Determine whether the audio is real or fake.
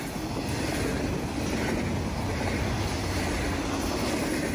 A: real